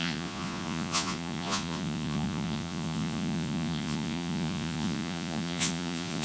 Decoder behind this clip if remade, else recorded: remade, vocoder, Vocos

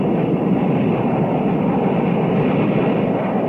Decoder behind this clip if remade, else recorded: recorded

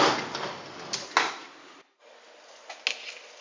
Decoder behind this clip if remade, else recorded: recorded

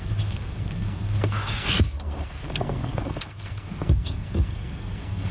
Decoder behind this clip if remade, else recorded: remade, codec, SNAC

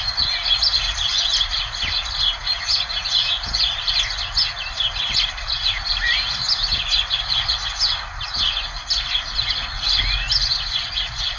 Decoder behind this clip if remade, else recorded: recorded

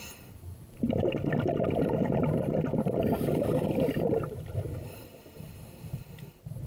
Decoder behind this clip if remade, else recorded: recorded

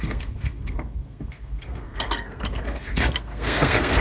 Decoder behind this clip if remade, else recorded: remade, codec, SNAC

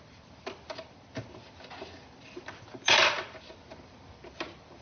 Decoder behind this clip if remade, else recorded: remade, vocoder, BigVGAN v2